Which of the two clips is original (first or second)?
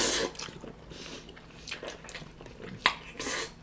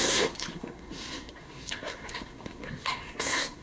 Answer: first